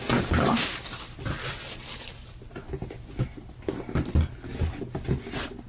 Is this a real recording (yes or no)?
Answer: yes